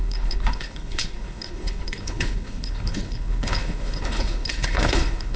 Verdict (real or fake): fake